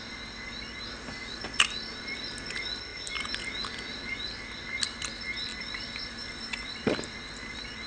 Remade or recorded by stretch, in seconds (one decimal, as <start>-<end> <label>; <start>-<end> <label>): 0.0-2.9 recorded; 2.9-4.8 remade; 4.8-5.5 recorded; 5.5-7.9 remade